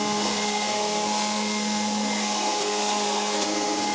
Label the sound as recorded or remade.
remade